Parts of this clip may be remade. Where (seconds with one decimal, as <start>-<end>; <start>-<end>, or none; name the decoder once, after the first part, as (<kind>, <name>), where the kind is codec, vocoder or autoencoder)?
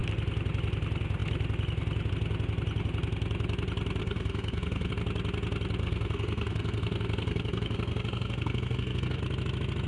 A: 4.0-4.9 (codec, SNAC); 5.8-9.2